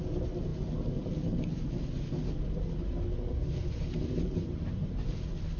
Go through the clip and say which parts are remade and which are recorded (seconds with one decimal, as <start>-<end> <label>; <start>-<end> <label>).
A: 0.0-5.6 recorded